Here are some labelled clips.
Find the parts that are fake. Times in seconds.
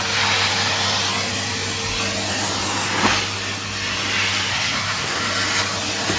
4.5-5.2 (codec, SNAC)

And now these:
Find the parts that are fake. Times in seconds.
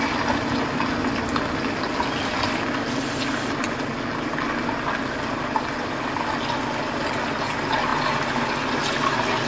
none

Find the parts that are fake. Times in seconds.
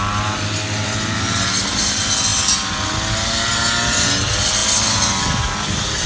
none